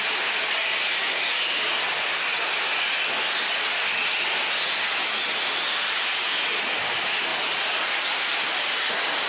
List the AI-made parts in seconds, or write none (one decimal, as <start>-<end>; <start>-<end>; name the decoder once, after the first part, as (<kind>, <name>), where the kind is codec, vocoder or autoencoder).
7.3-7.9 (vocoder, BigVGAN v2)